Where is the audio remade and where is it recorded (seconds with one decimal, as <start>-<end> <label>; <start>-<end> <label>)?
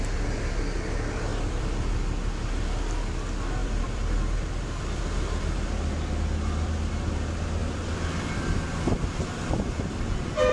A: 0.0-1.3 recorded; 1.3-1.9 remade; 1.9-3.6 recorded; 3.6-6.9 remade; 6.9-7.6 recorded; 7.6-10.5 remade